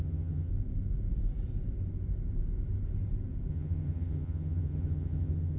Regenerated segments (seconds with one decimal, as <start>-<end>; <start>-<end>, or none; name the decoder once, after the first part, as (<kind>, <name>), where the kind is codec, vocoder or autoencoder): 0.0-0.5 (vocoder, HiFi-GAN); 3.5-5.6